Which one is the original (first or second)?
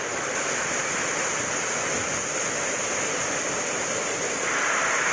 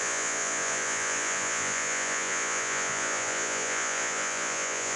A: first